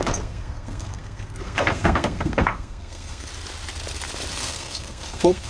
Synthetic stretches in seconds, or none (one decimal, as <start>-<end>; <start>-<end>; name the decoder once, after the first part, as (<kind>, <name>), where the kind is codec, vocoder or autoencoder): 0.0-3.3 (codec, SNAC); 4.3-5.5